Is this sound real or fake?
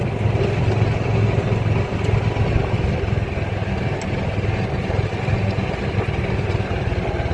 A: real